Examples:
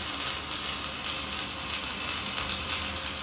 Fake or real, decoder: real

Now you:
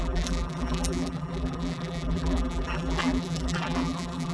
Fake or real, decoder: fake, vocoder, BigVGAN v2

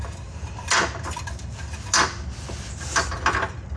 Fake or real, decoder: real